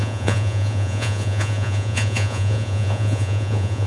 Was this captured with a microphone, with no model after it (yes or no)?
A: no